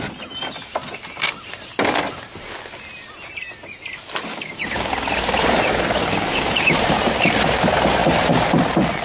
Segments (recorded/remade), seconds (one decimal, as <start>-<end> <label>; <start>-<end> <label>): 0.0-4.3 recorded; 4.3-4.9 remade; 4.9-6.0 recorded; 6.0-6.7 remade; 6.7-9.0 recorded